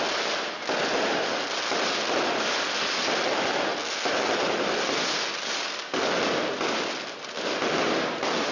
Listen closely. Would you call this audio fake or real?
real